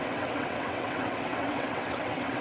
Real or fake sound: fake